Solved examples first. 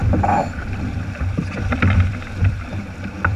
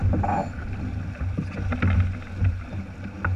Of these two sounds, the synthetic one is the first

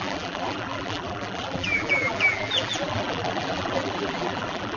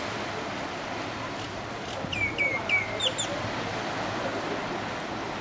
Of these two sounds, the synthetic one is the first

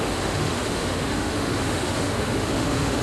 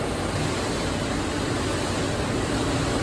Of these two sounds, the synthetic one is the first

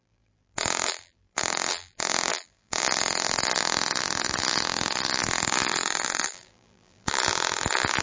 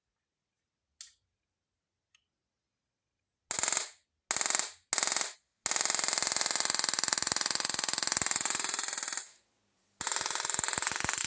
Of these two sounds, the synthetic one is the first